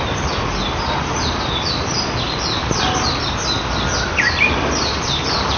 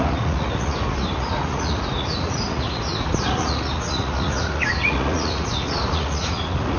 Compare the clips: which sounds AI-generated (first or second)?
second